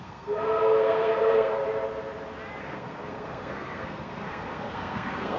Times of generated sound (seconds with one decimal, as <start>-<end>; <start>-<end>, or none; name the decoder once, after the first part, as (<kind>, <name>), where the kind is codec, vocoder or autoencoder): 0.0-1.6 (codec, SNAC); 2.6-5.4